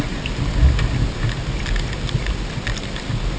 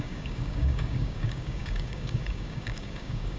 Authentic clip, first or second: first